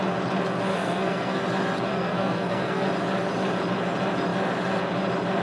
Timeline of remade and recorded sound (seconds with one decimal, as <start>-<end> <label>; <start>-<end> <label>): 0.0-0.7 recorded; 0.7-1.4 remade; 1.4-1.9 recorded; 1.9-2.9 remade; 2.9-5.4 recorded